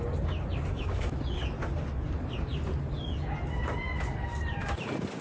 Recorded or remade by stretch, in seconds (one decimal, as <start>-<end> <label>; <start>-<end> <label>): 0.0-0.7 recorded; 0.7-1.2 remade; 1.2-5.2 recorded

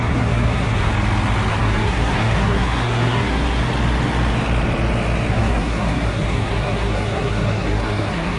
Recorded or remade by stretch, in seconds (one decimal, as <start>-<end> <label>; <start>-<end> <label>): 0.0-0.9 remade; 0.9-1.5 recorded; 1.5-3.6 remade; 3.6-5.3 recorded; 5.3-8.4 remade

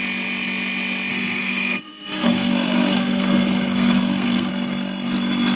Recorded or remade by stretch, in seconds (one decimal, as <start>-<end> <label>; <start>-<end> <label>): 0.0-1.1 recorded; 1.1-4.5 remade; 4.5-5.6 recorded

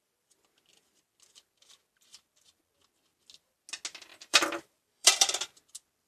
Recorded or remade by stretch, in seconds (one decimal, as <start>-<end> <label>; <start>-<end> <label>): 0.0-4.1 recorded; 4.1-5.3 remade; 5.3-6.1 recorded

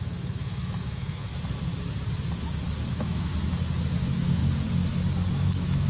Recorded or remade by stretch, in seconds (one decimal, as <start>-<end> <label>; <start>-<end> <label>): 0.0-1.3 remade; 1.3-2.9 recorded; 2.9-3.3 remade; 3.3-4.0 recorded; 4.0-4.4 remade; 4.4-5.3 recorded; 5.3-5.9 remade

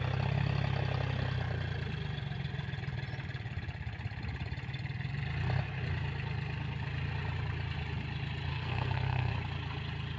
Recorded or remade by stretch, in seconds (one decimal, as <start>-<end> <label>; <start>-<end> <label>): 0.0-8.5 recorded; 8.5-9.3 remade; 9.3-10.2 recorded

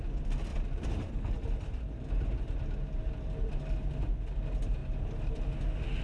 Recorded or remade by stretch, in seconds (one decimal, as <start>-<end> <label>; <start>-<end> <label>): 0.0-0.5 recorded; 0.5-1.1 remade; 1.1-6.0 recorded

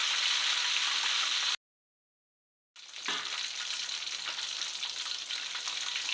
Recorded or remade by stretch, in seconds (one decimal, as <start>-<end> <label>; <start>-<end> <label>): 0.0-6.1 recorded